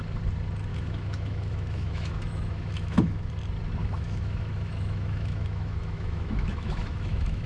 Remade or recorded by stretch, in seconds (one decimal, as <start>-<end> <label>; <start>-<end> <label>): 0.0-0.7 recorded; 0.7-3.3 remade; 3.3-3.8 recorded; 3.8-7.5 remade